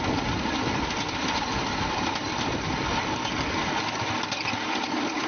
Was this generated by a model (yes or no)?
no